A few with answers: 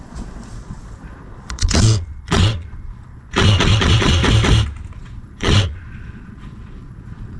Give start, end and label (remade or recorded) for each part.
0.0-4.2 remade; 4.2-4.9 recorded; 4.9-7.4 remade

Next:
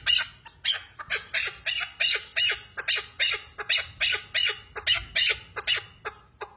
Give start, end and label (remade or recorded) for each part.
0.0-6.6 recorded

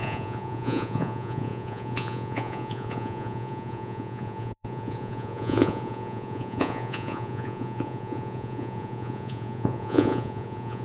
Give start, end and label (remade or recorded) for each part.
0.0-10.8 remade

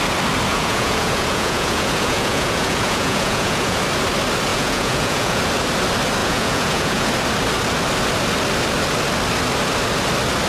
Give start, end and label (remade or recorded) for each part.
0.0-0.5 recorded; 0.5-3.8 remade; 3.8-4.5 recorded; 4.5-5.4 remade; 5.4-6.2 recorded; 6.2-7.1 remade; 7.1-10.5 recorded

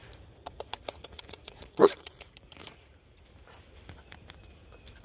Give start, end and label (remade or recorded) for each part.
0.0-3.0 remade; 3.0-5.0 recorded

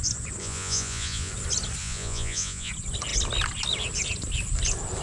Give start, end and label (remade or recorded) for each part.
0.0-0.4 recorded; 0.4-1.3 remade; 1.3-1.8 recorded; 1.8-2.7 remade; 2.7-5.0 recorded

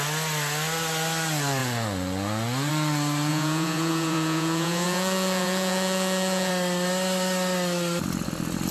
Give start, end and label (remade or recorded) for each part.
0.0-3.3 recorded; 3.3-6.5 remade; 6.5-8.7 recorded